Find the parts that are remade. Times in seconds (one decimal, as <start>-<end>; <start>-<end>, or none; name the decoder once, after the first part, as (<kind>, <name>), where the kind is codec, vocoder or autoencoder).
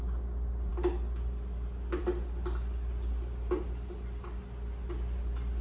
none